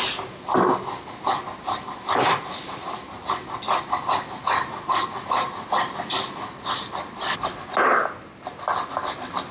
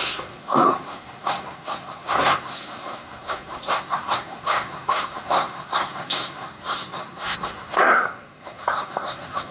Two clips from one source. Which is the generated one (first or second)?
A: second